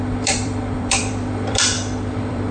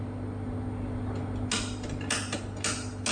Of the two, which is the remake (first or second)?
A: first